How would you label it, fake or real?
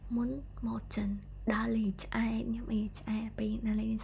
real